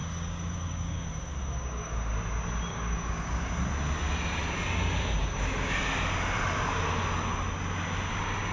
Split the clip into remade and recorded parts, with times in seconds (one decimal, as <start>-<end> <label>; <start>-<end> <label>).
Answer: 0.0-2.1 remade; 2.1-2.7 recorded; 2.7-3.5 remade; 3.5-5.2 recorded; 5.2-5.8 remade; 5.8-8.5 recorded